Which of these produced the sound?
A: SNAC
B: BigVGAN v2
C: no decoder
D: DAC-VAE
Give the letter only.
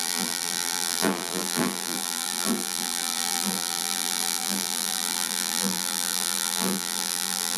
B